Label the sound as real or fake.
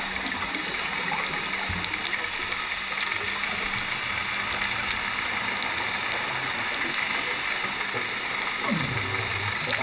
real